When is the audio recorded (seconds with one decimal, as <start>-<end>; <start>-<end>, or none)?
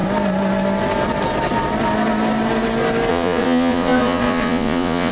0.0-3.1